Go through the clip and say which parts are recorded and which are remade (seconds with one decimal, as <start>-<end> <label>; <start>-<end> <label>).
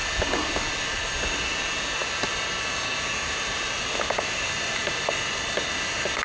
0.0-6.2 recorded